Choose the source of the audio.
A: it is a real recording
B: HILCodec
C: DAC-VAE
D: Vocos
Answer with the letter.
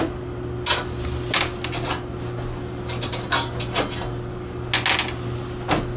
A